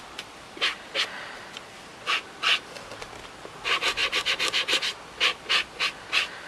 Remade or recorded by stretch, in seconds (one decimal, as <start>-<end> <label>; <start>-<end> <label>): 0.0-6.5 recorded